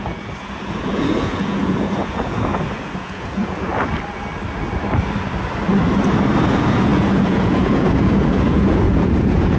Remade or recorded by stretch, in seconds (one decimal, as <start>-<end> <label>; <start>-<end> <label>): 0.0-3.7 remade; 3.7-6.5 recorded; 6.5-9.6 remade